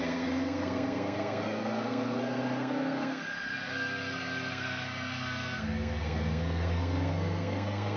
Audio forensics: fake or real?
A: fake